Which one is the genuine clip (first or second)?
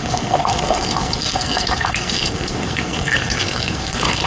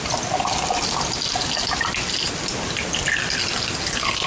second